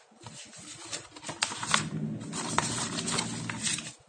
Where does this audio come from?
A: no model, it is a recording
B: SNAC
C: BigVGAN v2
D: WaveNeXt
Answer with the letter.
A